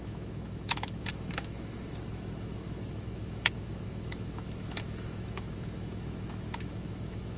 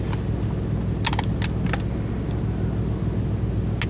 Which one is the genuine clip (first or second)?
second